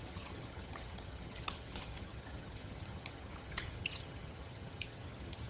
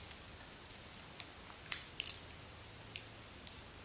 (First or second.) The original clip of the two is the second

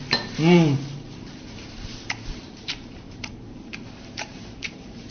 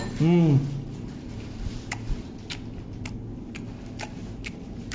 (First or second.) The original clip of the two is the second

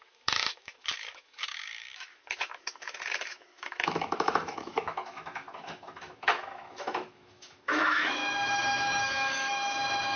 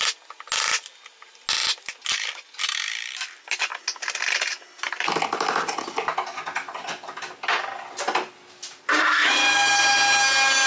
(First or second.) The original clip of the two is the second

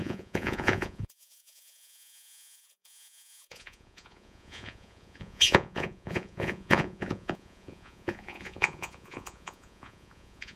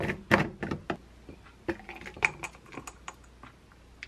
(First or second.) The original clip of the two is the second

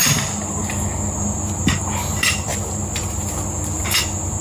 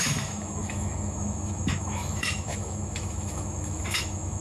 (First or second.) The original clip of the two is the first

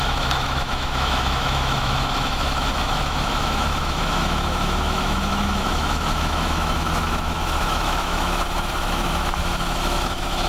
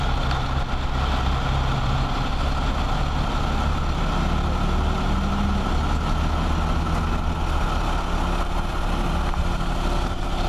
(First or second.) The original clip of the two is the second